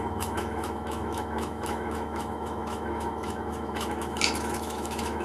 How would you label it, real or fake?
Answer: fake